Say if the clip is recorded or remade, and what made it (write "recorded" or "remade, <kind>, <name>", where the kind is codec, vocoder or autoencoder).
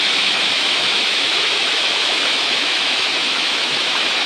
remade, autoencoder, DAC-VAE